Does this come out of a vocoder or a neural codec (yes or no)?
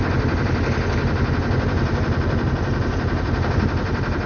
no